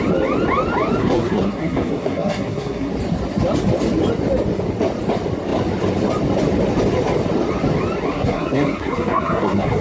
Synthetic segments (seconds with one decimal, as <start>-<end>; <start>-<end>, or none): 1.0-2.9; 8.1-9.8